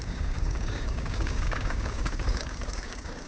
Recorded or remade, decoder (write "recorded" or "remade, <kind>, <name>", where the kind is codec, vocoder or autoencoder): remade, codec, DAC